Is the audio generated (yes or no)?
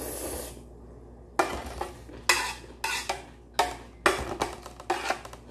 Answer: no